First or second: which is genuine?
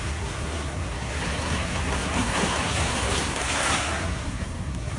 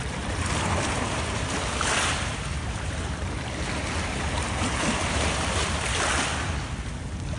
second